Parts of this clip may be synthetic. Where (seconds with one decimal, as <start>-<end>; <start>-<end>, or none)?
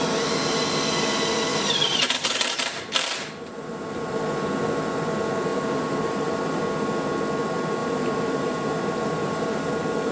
1.5-4.3; 5.5-6.6; 7.8-9.7